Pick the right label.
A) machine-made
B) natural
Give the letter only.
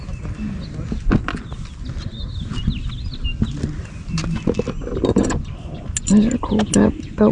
B